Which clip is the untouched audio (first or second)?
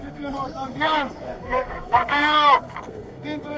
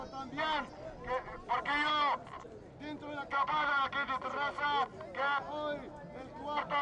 second